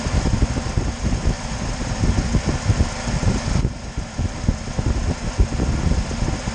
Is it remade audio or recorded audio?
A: recorded